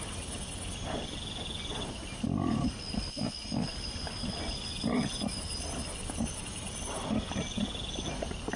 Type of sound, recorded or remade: recorded